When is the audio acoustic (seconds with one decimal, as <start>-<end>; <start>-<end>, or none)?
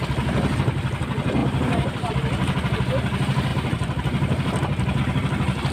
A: 0.0-1.4; 2.1-3.5; 5.0-5.7